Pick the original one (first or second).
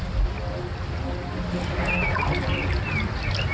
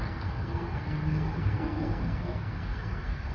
first